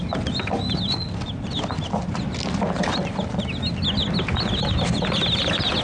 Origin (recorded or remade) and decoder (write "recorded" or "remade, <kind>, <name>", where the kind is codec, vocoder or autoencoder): recorded